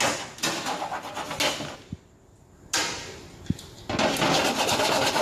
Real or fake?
real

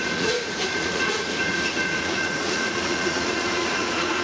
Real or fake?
fake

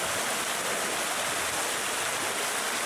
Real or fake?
real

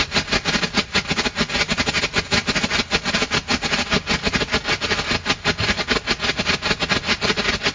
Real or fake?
real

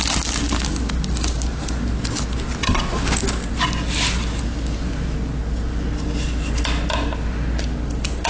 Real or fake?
real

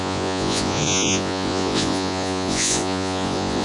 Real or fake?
fake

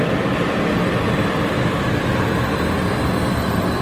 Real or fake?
real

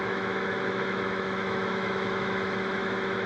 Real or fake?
fake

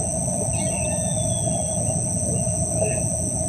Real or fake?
real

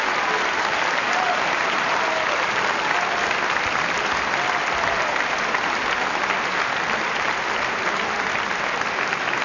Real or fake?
real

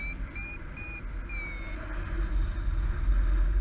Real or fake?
real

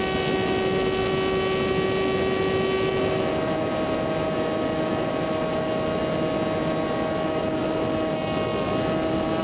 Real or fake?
real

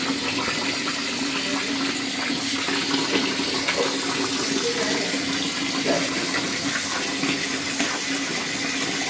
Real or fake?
real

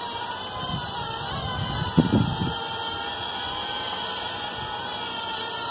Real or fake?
real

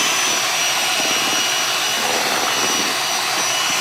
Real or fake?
real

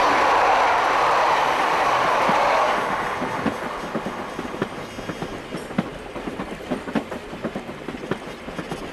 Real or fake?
real